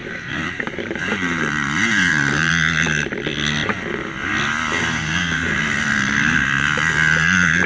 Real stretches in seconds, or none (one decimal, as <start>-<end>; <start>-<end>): 2.5-7.7